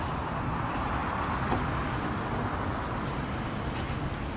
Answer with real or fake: real